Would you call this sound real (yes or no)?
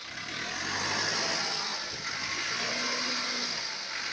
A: yes